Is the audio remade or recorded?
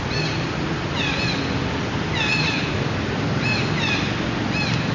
recorded